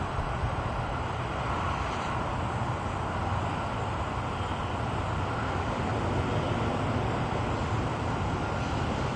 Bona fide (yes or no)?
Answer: yes